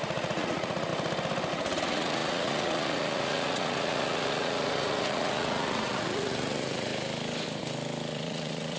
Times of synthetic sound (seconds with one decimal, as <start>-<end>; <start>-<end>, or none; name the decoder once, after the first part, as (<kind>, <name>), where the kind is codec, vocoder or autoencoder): 0.0-0.9 (vocoder, Vocos); 1.5-6.9; 8.1-8.8